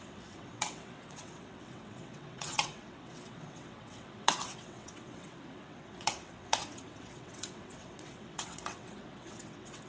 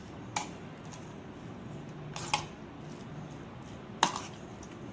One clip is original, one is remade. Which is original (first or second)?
second